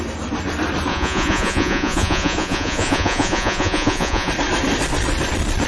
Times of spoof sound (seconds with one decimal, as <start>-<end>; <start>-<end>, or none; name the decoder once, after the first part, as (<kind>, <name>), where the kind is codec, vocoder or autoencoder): 0.9-4.3 (vocoder, Vocos)